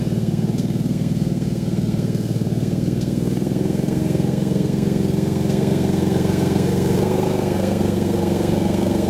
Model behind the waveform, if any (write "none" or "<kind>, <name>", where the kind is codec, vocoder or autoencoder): codec, SNAC